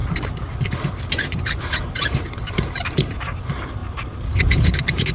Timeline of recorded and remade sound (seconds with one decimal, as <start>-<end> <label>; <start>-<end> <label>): 0.0-5.1 remade